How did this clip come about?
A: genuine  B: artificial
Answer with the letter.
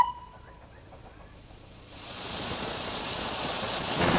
B